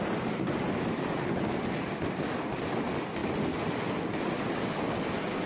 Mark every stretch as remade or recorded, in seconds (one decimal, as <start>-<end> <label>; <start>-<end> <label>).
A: 0.0-5.5 recorded